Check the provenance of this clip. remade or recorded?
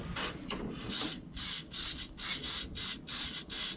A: recorded